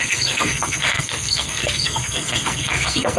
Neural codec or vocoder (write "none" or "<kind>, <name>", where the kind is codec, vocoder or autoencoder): codec, SNAC